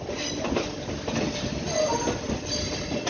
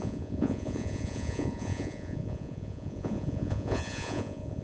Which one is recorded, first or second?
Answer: first